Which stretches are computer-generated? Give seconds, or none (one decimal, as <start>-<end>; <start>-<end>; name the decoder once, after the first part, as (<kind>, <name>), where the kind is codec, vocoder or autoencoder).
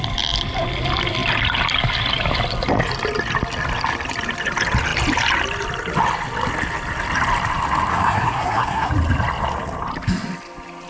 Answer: 7.9-8.9 (codec, SNAC)